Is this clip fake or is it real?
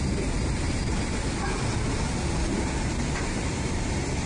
real